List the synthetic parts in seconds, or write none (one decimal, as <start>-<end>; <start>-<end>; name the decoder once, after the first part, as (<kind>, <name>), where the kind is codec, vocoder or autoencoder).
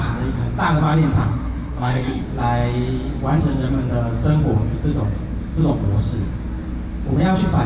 1.3-2.2 (codec, SNAC)